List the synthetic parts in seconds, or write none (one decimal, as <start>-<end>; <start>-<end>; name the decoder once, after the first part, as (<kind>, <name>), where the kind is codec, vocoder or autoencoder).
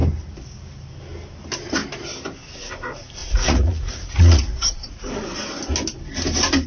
3.2-5.1 (vocoder, Vocos)